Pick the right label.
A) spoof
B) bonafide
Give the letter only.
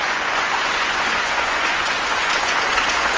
A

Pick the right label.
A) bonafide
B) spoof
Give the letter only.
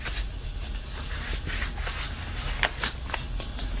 A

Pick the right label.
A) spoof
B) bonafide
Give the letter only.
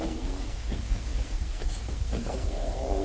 A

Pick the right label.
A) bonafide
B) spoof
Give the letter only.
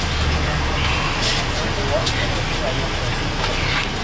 A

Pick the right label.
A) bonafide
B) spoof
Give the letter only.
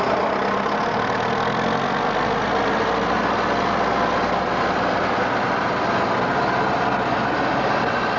A